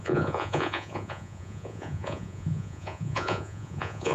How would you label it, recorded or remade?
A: remade